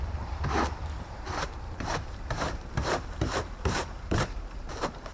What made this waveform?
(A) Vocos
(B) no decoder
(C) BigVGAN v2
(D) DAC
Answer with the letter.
C